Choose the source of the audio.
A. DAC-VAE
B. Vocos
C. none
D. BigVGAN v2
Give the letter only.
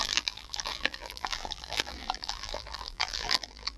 D